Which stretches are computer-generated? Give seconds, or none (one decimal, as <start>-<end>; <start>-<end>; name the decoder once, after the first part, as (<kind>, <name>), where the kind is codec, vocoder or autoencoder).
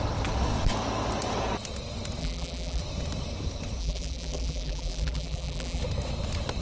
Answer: 2.2-2.8 (vocoder, BigVGAN v2); 3.8-5.8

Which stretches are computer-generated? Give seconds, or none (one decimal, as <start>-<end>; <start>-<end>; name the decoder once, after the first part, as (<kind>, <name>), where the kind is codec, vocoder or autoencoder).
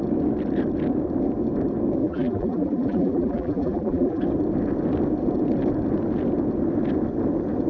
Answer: 2.0-4.2 (vocoder, BigVGAN v2)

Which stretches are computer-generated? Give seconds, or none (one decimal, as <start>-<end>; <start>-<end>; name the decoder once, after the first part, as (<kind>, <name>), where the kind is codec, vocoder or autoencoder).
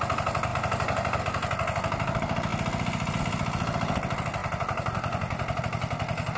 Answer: 0.5-1.2 (vocoder, BigVGAN v2); 4.4-5.6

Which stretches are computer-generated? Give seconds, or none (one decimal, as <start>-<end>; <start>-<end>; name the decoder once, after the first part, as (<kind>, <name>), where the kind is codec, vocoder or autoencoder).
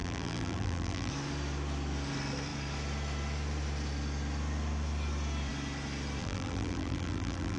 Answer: 0.0-1.1 (vocoder, BigVGAN v2); 6.2-7.6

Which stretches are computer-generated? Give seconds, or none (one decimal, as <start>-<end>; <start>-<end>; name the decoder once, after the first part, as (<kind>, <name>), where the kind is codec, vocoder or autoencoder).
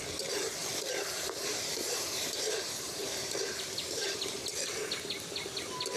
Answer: 0.7-4.2 (vocoder, BigVGAN v2)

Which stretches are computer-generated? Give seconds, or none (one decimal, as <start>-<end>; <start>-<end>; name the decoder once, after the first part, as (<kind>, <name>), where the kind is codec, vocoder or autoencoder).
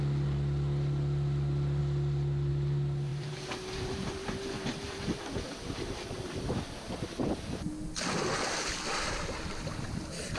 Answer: 3.1-6.6 (vocoder, BigVGAN v2)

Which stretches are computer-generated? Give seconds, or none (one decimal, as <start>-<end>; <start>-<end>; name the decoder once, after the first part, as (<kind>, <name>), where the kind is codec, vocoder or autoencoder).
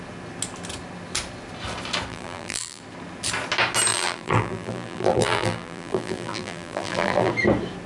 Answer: 2.1-2.8 (vocoder, BigVGAN v2); 3.9-7.3